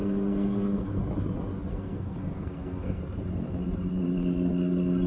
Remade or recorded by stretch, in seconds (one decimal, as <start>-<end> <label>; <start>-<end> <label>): 0.0-1.0 remade; 1.0-1.7 recorded; 1.7-3.0 remade; 3.0-5.1 recorded